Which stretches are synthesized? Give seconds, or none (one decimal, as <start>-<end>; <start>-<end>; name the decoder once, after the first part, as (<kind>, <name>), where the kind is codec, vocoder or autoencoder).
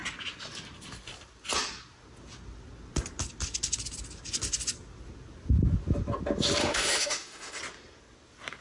6.6-7.6 (autoencoder, DAC-VAE)